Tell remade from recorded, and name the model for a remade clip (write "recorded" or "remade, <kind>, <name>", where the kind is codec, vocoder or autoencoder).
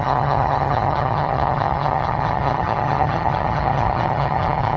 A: remade, vocoder, HiFi-GAN